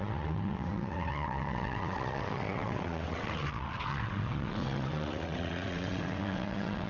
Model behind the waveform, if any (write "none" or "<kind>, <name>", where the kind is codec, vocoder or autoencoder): vocoder, WaveNeXt